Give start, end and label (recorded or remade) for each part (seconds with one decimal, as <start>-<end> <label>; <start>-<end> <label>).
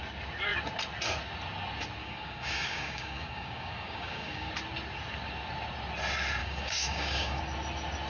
0.0-2.0 recorded; 2.0-4.5 remade; 4.5-6.4 recorded; 6.4-7.4 remade; 7.4-8.1 recorded